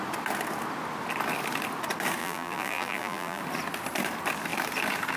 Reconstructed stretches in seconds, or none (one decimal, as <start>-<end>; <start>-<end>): 2.2-3.4